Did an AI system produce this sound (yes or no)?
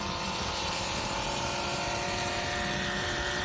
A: yes